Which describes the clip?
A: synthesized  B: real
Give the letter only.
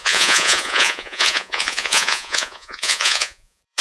A